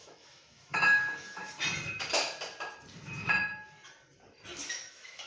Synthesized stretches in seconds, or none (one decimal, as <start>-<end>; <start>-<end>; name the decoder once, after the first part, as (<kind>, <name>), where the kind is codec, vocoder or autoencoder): 0.0-1.4 (autoencoder, DAC-VAE); 4.6-5.3